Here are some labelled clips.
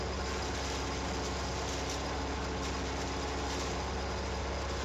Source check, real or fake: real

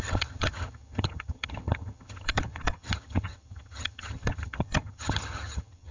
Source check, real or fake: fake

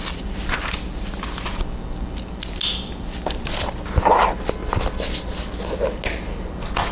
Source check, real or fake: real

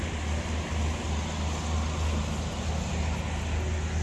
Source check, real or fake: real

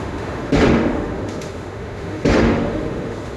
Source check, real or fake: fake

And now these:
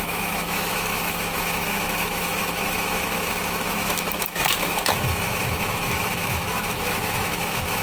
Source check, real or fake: fake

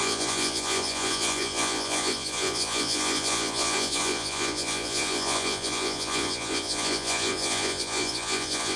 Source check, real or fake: fake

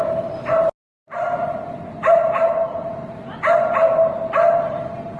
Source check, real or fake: real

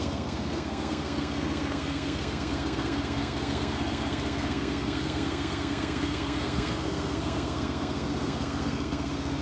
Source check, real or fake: fake